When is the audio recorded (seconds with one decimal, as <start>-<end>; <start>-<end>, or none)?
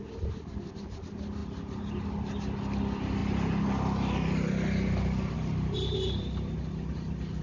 0.0-7.4